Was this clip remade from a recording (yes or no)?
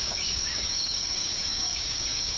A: yes